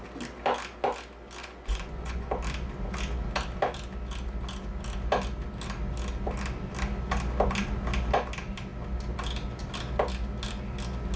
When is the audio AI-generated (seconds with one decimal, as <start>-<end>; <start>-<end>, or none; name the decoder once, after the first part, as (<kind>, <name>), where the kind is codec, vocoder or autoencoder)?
1.4-2.3 (vocoder, Vocos)